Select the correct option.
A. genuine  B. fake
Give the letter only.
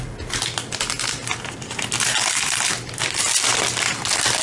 A